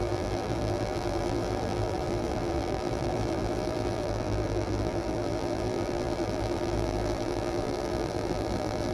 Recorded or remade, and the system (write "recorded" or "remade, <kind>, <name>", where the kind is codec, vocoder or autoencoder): remade, vocoder, BigVGAN v2